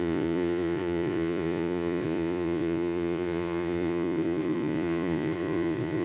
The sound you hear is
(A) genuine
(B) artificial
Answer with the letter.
B